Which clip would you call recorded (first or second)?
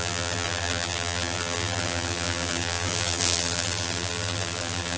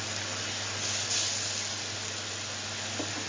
second